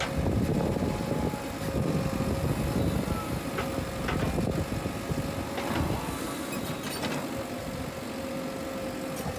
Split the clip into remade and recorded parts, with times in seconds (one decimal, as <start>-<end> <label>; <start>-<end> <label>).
0.0-0.5 recorded; 0.5-1.2 remade; 1.2-9.4 recorded